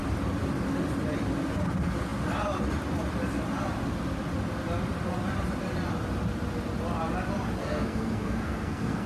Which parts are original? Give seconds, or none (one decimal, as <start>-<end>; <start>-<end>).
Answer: 0.0-7.6